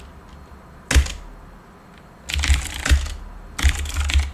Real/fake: real